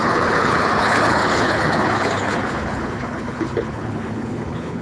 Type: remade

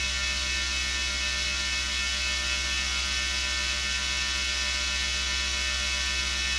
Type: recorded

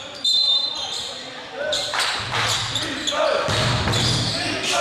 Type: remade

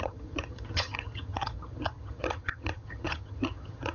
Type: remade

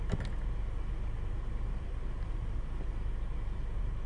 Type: remade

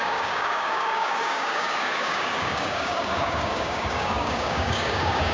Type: remade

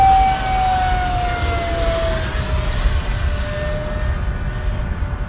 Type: recorded